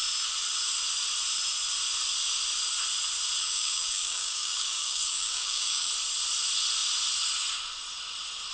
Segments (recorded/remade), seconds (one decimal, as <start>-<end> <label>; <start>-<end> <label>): 0.0-3.4 recorded; 3.4-5.9 remade; 5.9-8.5 recorded